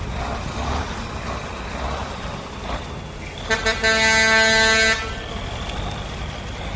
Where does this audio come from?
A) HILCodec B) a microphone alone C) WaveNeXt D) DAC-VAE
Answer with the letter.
B